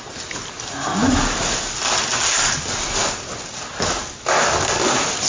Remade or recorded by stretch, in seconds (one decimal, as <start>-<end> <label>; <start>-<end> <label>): 0.0-5.3 recorded